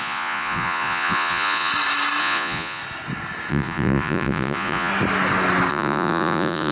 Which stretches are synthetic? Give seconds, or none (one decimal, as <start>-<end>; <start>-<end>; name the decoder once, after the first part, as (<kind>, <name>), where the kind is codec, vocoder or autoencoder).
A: 0.0-1.7 (vocoder, Vocos); 2.2-2.8; 3.5-4.9; 5.7-6.7